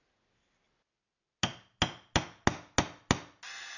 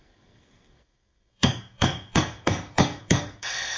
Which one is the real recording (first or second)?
first